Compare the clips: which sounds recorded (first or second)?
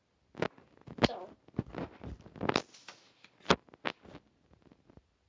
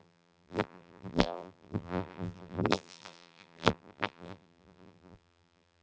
first